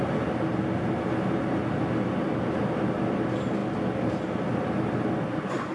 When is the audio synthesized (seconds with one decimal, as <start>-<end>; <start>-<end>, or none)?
none